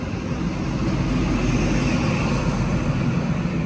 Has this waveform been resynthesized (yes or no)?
no